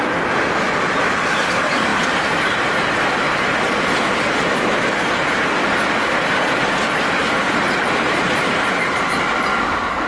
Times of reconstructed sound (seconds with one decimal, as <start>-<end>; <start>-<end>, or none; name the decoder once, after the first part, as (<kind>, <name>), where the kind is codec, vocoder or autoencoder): 9.5-10.1 (codec, DAC)